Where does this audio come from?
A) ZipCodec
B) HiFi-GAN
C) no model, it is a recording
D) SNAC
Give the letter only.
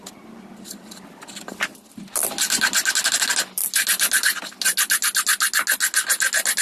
C